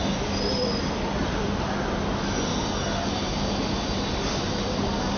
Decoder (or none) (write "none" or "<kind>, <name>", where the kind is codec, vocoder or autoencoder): none